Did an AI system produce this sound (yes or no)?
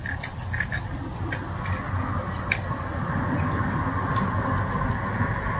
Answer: no